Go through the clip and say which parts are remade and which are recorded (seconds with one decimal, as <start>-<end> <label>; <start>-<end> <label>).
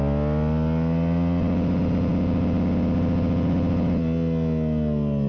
0.0-5.3 recorded